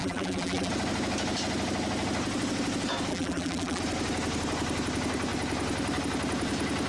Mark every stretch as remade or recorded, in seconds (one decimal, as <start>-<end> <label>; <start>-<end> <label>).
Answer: 0.0-0.7 remade; 0.7-3.1 recorded; 3.1-3.8 remade; 3.8-6.9 recorded